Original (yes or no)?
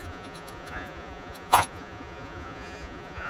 no